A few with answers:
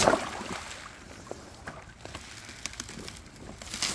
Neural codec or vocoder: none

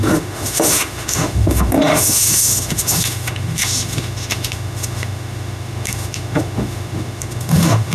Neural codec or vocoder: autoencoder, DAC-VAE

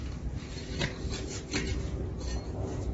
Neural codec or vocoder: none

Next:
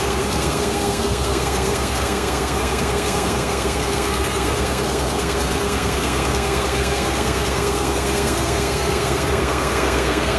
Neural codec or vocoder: codec, SNAC